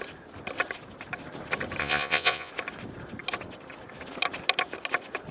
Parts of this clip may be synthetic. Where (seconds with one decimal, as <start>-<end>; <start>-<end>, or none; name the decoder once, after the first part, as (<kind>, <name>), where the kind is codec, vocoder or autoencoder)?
1.8-2.5 (vocoder, Vocos)